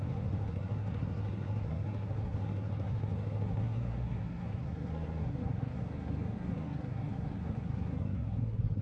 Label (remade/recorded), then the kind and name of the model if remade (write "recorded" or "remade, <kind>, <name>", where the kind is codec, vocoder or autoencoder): remade, codec, SNAC